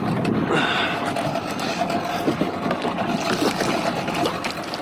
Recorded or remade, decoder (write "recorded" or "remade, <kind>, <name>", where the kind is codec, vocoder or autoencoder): recorded